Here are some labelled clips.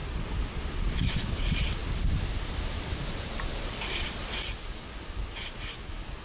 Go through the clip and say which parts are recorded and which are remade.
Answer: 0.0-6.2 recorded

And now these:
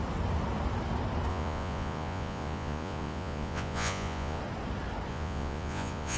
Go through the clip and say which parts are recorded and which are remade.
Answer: 0.0-1.3 recorded; 1.3-4.4 remade; 4.4-5.1 recorded; 5.1-6.2 remade

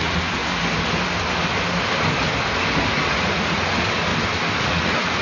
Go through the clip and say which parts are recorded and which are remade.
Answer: 0.0-0.4 remade; 0.4-2.7 recorded; 2.7-4.1 remade; 4.1-4.6 recorded; 4.6-5.2 remade

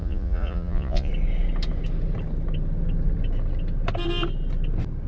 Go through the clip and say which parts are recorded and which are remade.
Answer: 0.0-1.1 remade; 1.1-5.1 recorded

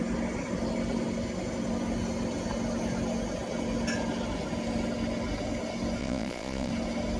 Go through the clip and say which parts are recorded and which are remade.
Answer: 0.0-6.0 recorded; 6.0-6.7 remade; 6.7-7.2 recorded

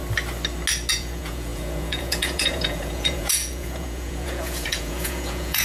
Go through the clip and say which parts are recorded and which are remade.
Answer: 0.0-0.9 recorded; 0.9-5.6 remade

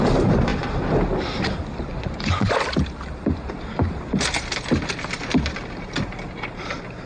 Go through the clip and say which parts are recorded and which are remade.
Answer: 0.0-1.9 recorded; 1.9-2.5 remade; 2.5-7.1 recorded

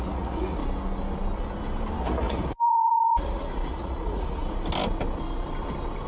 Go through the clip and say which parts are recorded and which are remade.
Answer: 0.0-0.6 remade; 0.6-2.0 recorded; 2.0-4.4 remade; 4.4-6.1 recorded